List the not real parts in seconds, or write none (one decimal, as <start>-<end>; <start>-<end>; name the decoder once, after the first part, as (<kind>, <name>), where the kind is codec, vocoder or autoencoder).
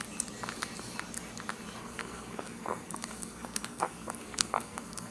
1.8-5.1 (codec, SNAC)